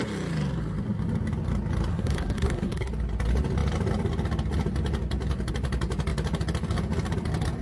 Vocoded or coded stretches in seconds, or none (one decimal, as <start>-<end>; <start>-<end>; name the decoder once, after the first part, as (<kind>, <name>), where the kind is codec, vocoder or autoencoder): 1.9-2.9 (codec, SNAC)